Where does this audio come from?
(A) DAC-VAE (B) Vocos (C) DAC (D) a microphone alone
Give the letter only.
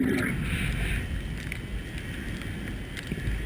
D